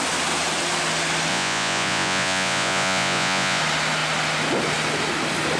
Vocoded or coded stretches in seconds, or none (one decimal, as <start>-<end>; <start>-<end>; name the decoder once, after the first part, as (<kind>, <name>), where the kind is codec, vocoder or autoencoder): 1.3-3.6 (vocoder, Vocos)